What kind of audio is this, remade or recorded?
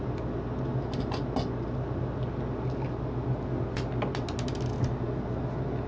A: recorded